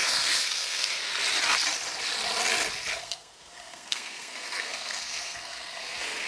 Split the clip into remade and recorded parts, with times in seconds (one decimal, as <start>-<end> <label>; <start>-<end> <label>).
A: 0.0-1.1 remade; 1.1-3.0 recorded; 3.0-6.3 remade